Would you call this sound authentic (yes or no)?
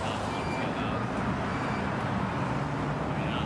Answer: yes